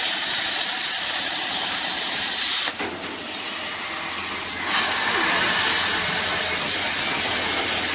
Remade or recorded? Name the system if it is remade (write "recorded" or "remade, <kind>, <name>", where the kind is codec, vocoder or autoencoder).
recorded